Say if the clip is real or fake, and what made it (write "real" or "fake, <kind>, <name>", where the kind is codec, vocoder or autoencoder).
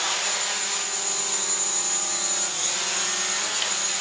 real